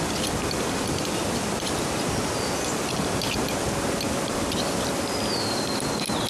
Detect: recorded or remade recorded